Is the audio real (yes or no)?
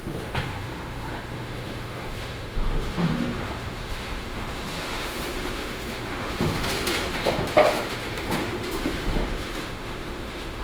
no